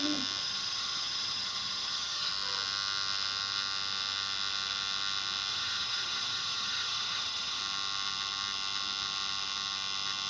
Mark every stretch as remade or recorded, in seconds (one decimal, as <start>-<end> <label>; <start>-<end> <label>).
0.0-0.4 recorded; 0.4-2.3 remade; 2.3-5.5 recorded; 5.5-7.6 remade; 7.6-10.3 recorded